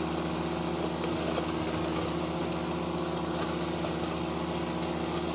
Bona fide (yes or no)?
yes